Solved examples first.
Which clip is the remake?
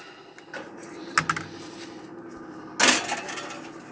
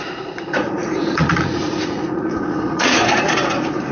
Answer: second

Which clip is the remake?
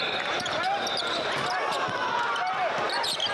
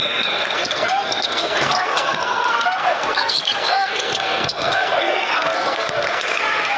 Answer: second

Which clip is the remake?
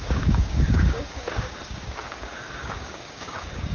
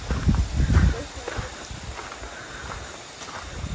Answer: first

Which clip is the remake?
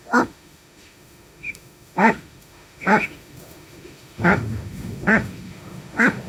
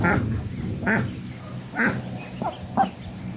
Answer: first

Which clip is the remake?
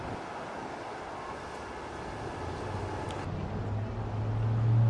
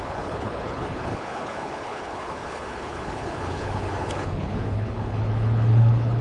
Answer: second